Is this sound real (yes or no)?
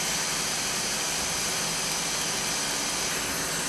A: yes